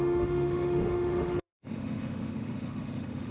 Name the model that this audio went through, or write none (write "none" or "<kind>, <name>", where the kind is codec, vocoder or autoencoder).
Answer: autoencoder, DAC-VAE